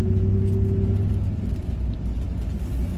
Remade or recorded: recorded